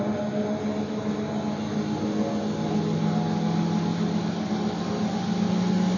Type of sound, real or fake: real